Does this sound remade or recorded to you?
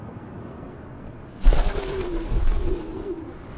remade